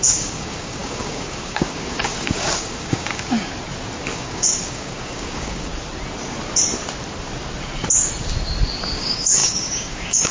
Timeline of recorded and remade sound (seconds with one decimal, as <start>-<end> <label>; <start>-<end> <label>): 0.0-3.5 remade; 3.5-4.1 recorded; 4.1-5.7 remade; 5.7-8.9 recorded; 8.9-10.3 remade